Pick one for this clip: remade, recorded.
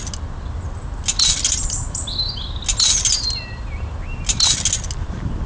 recorded